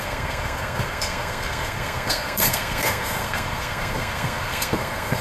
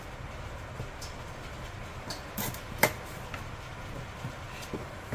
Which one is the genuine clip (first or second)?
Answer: second